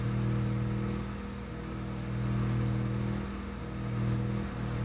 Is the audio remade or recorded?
recorded